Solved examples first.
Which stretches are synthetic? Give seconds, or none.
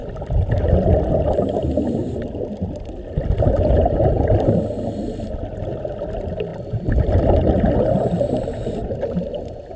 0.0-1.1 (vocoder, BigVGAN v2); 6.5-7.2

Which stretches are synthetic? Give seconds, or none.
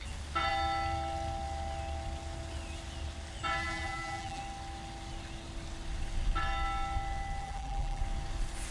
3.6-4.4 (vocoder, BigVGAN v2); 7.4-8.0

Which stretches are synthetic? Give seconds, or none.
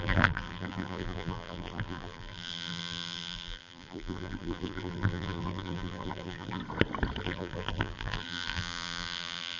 0.0-6.6 (vocoder, BigVGAN v2); 7.2-9.6